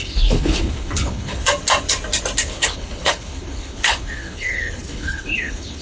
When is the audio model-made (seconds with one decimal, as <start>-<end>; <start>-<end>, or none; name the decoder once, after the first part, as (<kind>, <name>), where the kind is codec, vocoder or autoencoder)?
0.0-1.4 (codec, HILCodec); 2.5-5.8